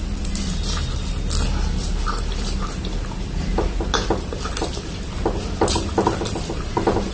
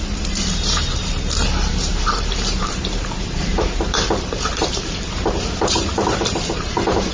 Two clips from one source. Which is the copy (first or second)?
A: second